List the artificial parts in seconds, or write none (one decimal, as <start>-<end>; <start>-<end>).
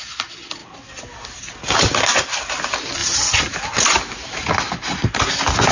none